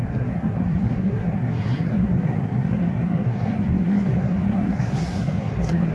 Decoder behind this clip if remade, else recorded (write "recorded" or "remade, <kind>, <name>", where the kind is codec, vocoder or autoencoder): remade, codec, SNAC